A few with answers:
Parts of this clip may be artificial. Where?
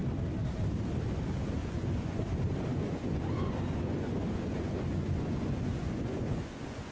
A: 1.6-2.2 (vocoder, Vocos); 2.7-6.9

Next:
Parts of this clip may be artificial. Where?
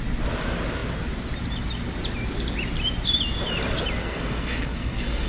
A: 4.0-5.3 (codec, SNAC)